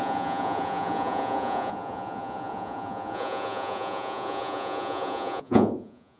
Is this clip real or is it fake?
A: fake